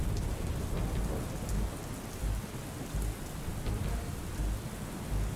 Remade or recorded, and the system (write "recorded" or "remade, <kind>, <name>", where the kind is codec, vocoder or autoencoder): recorded